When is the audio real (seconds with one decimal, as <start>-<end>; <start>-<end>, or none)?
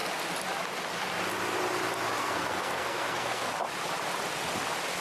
0.0-2.2; 3.5-5.0